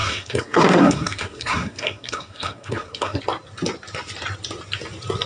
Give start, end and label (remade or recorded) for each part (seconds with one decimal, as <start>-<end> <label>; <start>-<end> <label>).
0.0-3.2 remade; 3.2-5.3 recorded